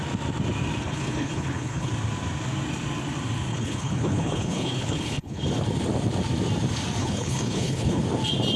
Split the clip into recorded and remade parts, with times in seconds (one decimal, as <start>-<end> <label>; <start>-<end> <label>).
0.0-0.8 recorded; 0.8-1.9 remade; 1.9-3.5 recorded; 3.5-5.4 remade; 5.4-7.0 recorded; 7.0-8.0 remade; 8.0-8.6 recorded